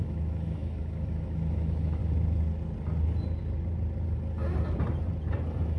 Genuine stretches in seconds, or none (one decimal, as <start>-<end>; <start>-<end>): 2.0-5.8